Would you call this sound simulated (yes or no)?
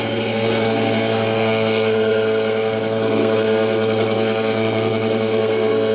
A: yes